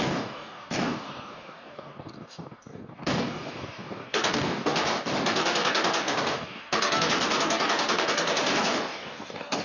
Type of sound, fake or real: fake